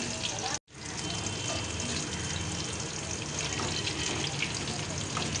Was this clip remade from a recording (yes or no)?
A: no